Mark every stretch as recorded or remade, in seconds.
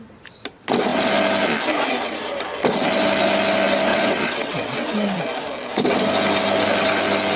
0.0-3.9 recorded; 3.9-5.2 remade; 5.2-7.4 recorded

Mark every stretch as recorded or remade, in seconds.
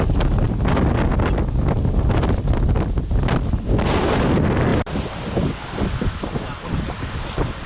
0.0-7.7 recorded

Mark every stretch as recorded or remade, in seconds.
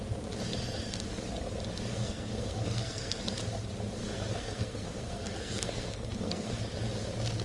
0.0-1.9 recorded; 1.9-3.2 remade; 3.2-4.0 recorded; 4.0-6.6 remade; 6.6-7.4 recorded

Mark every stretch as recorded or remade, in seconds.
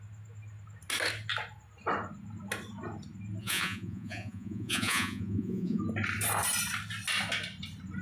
0.0-3.4 recorded; 3.4-5.8 remade; 5.8-8.0 recorded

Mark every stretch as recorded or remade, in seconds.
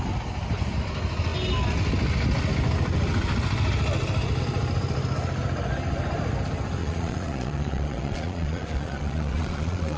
0.0-6.8 recorded; 6.8-10.0 remade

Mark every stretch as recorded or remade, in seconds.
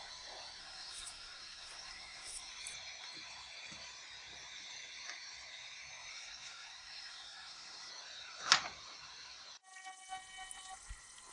0.0-0.6 recorded; 0.6-2.5 remade; 2.5-6.1 recorded; 6.1-7.9 remade; 7.9-11.3 recorded